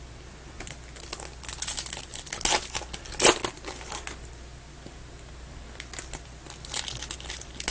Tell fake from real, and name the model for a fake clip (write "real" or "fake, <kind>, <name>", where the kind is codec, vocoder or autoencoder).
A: real